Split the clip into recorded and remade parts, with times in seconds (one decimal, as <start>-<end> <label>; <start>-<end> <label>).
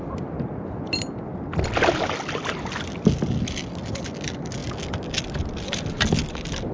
0.0-6.7 recorded